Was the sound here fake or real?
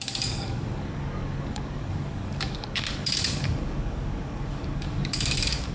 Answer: fake